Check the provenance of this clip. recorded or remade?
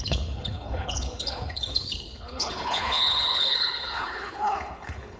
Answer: remade